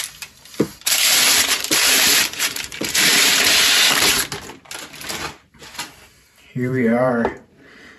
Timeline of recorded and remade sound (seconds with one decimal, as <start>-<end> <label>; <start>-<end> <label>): 0.0-0.7 recorded; 0.7-4.1 remade; 4.1-6.5 recorded; 6.5-7.1 remade; 7.1-8.0 recorded